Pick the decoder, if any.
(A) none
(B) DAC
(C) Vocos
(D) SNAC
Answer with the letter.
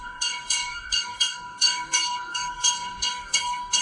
B